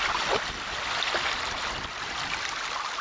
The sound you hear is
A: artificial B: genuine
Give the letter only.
B